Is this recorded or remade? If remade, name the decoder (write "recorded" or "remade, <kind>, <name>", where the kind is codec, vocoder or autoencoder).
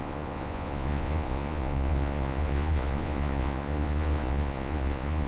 remade, vocoder, Vocos